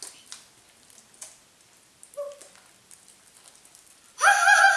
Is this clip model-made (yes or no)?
no